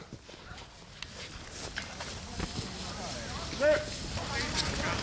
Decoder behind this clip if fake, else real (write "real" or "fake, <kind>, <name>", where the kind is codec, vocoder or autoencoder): real